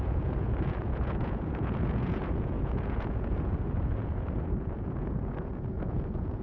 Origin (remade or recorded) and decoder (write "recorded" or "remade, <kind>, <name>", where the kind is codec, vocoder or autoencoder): remade, vocoder, Vocos